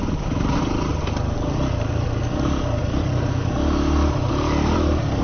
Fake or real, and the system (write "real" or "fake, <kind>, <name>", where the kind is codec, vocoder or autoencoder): real